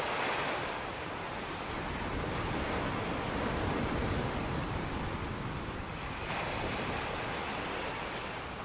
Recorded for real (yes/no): yes